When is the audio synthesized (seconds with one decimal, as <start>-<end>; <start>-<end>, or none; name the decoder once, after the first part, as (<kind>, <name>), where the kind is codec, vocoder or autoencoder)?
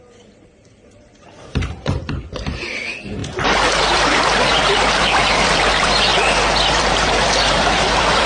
0.0-3.2 (vocoder, BigVGAN v2); 3.8-6.1; 6.7-8.3